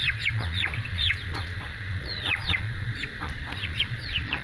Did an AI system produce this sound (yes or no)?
yes